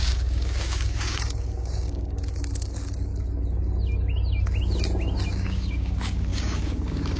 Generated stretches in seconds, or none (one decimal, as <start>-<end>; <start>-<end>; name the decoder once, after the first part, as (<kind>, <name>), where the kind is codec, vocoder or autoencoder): 0.0-3.1 (codec, DAC); 5.3-7.2

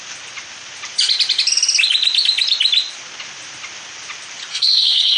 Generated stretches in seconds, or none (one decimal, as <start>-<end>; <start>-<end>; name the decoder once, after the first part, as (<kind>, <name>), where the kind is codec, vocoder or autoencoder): 4.5-5.2 (codec, SNAC)